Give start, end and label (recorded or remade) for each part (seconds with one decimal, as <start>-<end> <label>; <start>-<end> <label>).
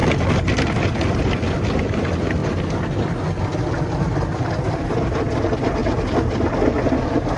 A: 0.0-0.7 recorded; 0.7-2.4 remade; 2.4-3.4 recorded; 3.4-5.8 remade; 5.8-6.9 recorded; 6.9-7.4 remade